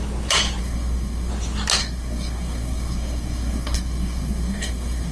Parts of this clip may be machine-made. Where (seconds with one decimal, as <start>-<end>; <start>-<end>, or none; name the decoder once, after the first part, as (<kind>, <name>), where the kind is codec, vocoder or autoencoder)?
0.6-1.3 (codec, SNAC); 1.8-5.1